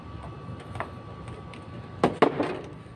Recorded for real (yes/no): yes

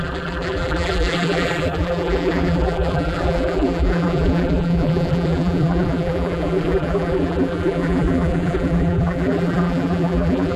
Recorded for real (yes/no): no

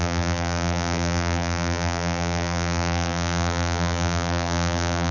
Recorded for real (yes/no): no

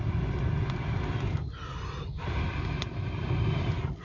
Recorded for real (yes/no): yes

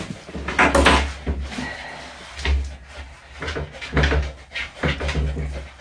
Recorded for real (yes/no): yes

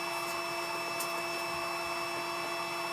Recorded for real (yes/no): yes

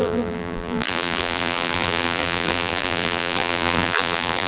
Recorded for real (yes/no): no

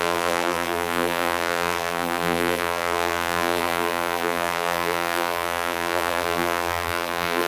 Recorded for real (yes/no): no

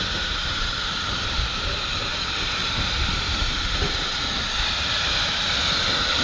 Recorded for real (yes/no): no